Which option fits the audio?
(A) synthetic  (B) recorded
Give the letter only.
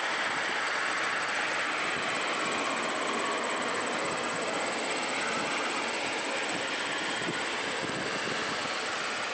B